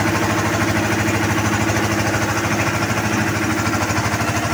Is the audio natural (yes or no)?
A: yes